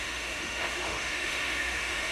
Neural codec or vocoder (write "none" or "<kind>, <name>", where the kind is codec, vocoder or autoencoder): autoencoder, DAC-VAE